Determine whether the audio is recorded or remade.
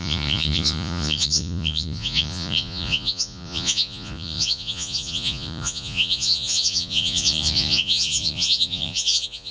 remade